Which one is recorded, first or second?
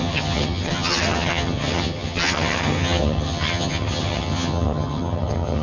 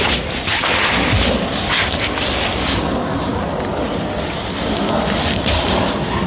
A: second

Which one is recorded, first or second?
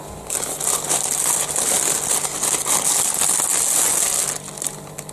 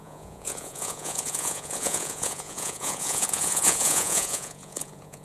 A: first